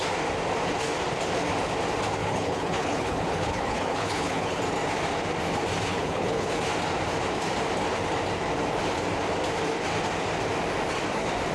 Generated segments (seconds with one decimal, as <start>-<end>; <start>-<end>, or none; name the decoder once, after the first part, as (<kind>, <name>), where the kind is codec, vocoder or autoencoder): 2.2-4.6 (codec, HILCodec); 5.9-6.6